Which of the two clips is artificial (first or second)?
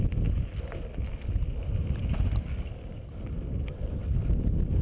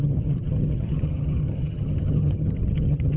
second